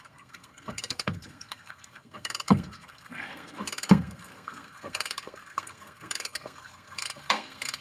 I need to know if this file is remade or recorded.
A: remade